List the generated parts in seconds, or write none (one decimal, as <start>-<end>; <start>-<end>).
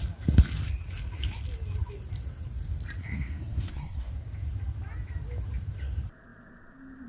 3.0-4.1